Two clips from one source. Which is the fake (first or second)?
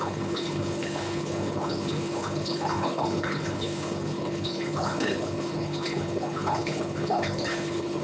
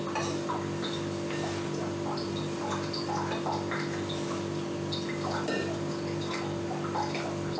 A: first